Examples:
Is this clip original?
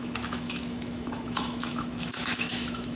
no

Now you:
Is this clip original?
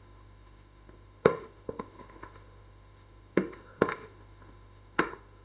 no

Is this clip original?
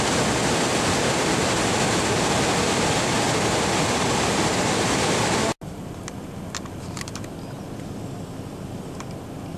yes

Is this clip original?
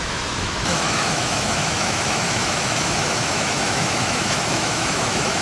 no